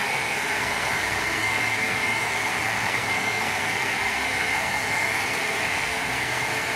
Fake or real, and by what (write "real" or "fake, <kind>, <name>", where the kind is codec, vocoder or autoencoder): fake, codec, SNAC